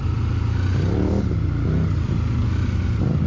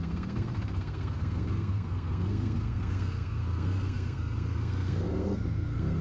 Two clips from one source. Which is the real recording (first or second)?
first